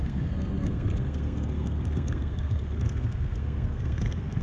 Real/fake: fake